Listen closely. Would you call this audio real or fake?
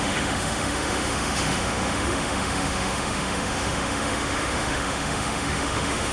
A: fake